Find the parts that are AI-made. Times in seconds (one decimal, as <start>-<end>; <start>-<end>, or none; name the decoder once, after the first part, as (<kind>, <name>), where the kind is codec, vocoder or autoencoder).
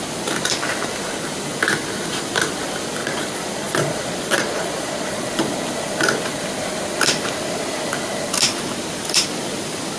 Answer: 3.0-5.2 (vocoder, Vocos)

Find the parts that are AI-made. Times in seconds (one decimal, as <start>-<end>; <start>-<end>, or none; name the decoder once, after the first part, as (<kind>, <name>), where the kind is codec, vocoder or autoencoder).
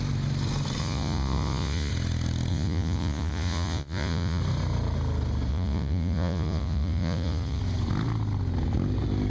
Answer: 0.8-1.9 (vocoder, Vocos); 2.5-4.4; 5.5-7.6